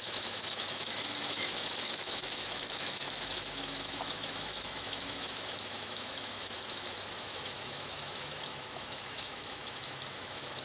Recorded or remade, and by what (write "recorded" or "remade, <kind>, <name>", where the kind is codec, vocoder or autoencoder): remade, autoencoder, DAC-VAE